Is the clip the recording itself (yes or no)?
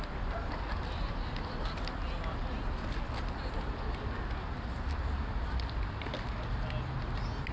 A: yes